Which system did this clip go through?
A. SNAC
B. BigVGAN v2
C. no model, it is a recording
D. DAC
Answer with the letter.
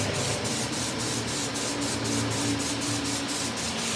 C